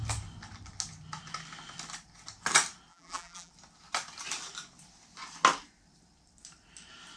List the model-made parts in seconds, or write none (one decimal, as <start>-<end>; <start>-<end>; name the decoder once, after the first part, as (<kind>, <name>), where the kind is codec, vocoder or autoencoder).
2.9-3.5 (vocoder, BigVGAN v2)